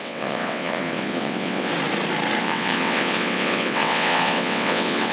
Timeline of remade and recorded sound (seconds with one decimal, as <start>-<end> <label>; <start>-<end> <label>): 0.0-1.7 remade; 1.7-2.4 recorded; 2.4-5.1 remade